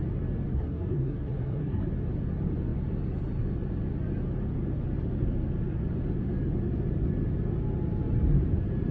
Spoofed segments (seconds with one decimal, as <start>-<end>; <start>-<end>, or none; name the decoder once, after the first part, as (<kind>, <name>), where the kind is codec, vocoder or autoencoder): 0.5-1.9 (codec, SNAC)